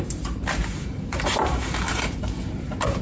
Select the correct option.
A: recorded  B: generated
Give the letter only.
B